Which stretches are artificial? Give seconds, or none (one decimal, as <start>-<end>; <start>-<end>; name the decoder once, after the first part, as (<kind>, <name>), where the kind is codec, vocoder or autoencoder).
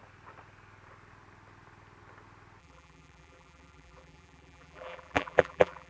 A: 2.6-5.9 (vocoder, BigVGAN v2)